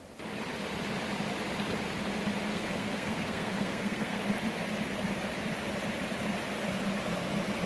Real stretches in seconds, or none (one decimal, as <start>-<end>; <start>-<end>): 0.0-2.5; 4.2-7.7